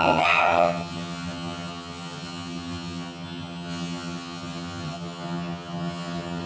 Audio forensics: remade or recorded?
remade